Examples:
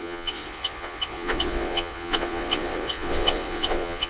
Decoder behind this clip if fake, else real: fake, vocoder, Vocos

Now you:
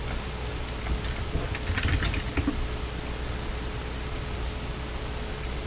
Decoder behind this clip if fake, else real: real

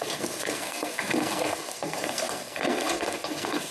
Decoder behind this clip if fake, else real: fake, codec, SNAC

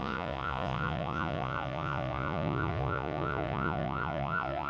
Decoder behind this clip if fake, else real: fake, vocoder, Vocos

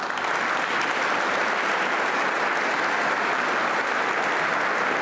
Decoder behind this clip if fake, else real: real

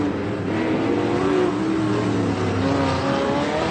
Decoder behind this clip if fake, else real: real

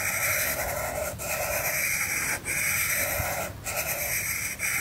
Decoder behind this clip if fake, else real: fake, vocoder, BigVGAN v2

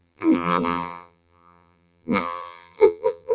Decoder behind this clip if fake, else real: fake, vocoder, BigVGAN v2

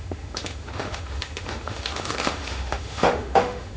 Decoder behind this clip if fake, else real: fake, autoencoder, DAC-VAE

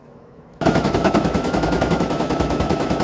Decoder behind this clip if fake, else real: fake, autoencoder, DAC-VAE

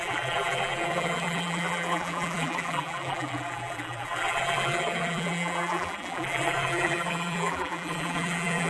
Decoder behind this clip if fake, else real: fake, vocoder, BigVGAN v2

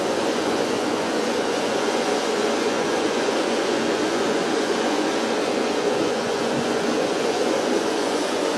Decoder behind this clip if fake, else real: fake, vocoder, Vocos